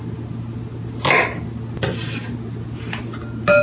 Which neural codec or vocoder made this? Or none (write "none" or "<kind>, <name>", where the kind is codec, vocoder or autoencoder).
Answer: none